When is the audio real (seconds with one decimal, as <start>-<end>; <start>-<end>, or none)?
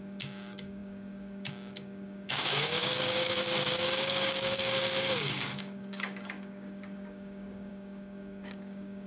none